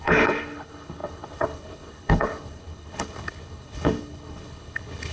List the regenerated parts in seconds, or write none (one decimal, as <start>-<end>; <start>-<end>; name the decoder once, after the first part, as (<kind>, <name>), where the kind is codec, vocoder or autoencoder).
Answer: 0.0-5.1 (codec, HILCodec)